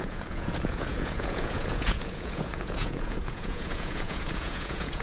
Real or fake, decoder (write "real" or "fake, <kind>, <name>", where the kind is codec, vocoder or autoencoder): fake, vocoder, Vocos